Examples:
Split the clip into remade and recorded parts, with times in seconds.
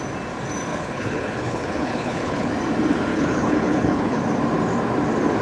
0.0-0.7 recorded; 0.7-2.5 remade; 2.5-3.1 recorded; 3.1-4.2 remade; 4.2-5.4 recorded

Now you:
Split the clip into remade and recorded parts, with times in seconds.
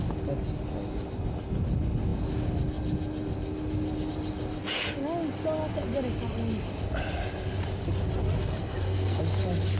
0.0-8.4 recorded; 8.4-9.2 remade; 9.2-9.8 recorded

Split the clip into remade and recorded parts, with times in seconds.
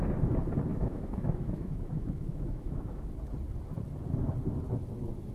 0.0-0.7 recorded; 0.7-3.1 remade; 3.1-5.3 recorded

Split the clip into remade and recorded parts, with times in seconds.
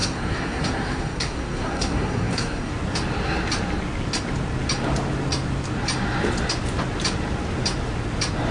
0.0-2.7 remade; 2.7-8.5 recorded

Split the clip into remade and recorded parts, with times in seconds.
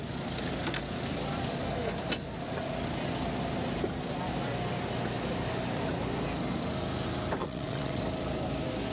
0.0-7.4 recorded; 7.4-8.0 remade; 8.0-8.9 recorded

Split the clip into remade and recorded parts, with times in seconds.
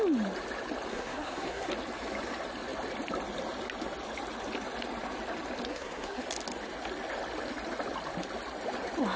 0.0-0.9 recorded; 0.9-1.7 remade; 1.7-5.7 recorded; 5.7-6.2 remade; 6.2-9.2 recorded